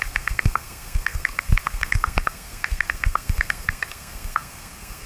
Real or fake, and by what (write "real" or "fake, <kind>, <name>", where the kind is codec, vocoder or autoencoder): fake, codec, SNAC